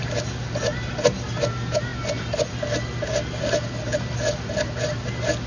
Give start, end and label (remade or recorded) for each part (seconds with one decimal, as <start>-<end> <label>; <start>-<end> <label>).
0.0-5.5 recorded